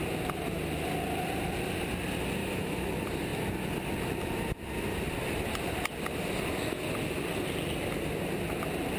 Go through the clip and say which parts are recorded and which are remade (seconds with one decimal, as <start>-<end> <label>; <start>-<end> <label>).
0.0-2.4 recorded; 2.4-2.9 remade; 2.9-9.0 recorded